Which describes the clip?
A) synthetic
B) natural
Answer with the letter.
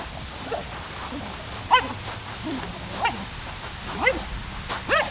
B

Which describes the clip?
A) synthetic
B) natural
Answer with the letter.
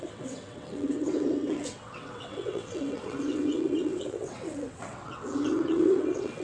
A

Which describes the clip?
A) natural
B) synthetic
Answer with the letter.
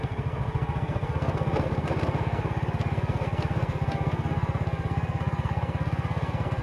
B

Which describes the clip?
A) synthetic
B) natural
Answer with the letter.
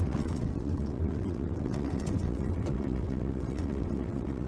A